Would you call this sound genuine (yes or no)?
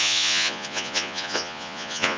no